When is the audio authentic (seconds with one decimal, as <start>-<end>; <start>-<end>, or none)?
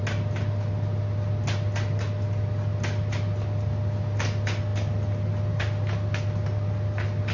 0.0-7.3